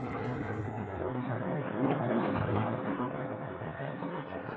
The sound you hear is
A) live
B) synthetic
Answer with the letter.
B